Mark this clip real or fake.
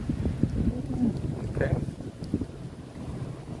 real